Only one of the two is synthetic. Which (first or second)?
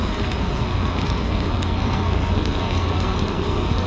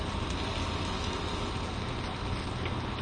first